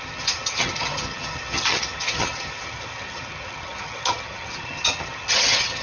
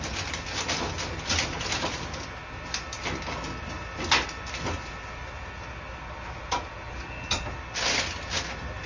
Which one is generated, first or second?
first